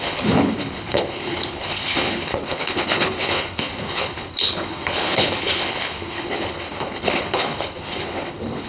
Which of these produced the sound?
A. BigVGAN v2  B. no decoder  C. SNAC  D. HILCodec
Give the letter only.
D